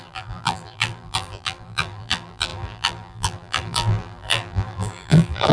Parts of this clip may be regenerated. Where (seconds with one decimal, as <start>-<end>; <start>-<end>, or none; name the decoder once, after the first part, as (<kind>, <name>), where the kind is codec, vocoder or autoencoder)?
0.0-5.5 (vocoder, BigVGAN v2)